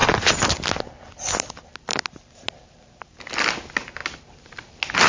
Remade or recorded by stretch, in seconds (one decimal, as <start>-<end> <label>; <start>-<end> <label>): 0.0-5.1 recorded